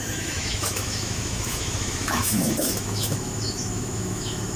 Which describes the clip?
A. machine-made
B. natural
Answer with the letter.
A